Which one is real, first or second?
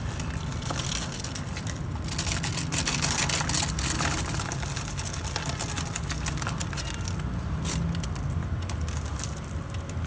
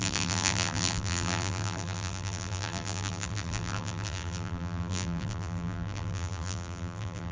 first